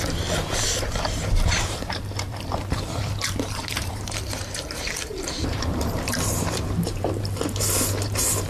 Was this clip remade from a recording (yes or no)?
yes